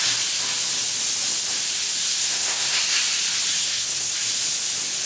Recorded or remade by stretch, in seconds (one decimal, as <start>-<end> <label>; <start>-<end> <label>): 0.0-2.2 recorded; 2.2-2.8 remade; 2.8-3.6 recorded; 3.6-4.1 remade; 4.1-5.1 recorded